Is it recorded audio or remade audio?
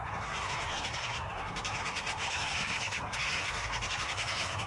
remade